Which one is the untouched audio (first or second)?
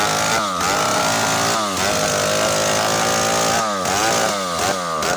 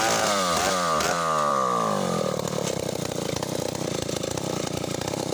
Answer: first